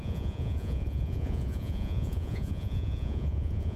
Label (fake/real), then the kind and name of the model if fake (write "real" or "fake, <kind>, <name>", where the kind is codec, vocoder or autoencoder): fake, vocoder, Vocos